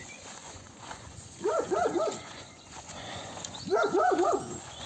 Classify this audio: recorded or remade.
remade